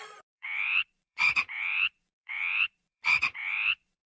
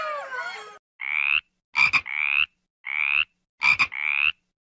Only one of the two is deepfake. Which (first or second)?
first